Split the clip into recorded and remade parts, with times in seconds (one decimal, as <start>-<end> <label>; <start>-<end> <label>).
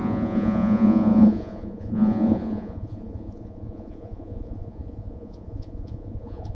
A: 0.0-6.5 remade